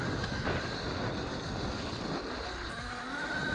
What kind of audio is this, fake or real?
real